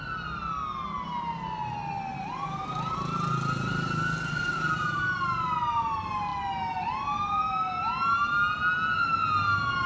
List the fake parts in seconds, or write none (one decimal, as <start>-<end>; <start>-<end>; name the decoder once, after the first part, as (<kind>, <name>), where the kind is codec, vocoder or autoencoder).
2.1-5.0 (vocoder, BigVGAN v2)